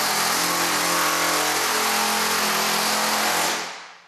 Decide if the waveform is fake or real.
real